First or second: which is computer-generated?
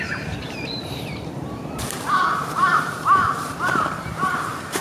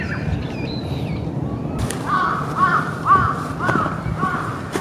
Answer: first